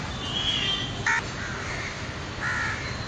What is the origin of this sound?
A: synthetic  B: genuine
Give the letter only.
B